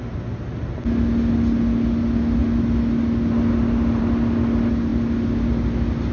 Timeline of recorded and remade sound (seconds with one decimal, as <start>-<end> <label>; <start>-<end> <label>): 0.0-6.1 recorded